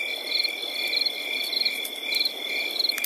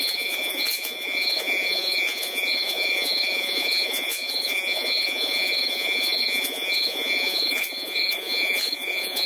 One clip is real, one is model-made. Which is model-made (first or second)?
second